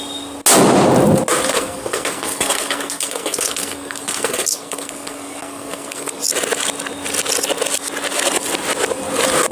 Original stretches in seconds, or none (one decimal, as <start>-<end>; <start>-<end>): 0.0-1.5; 6.2-9.5